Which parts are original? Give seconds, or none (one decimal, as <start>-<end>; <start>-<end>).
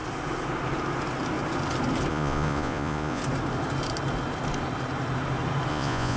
0.0-2.1; 3.2-5.7